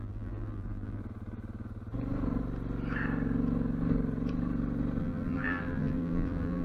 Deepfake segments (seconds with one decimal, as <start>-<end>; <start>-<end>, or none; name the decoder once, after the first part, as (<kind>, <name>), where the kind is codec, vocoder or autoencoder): 0.0-1.0 (vocoder, BigVGAN v2); 5.0-6.6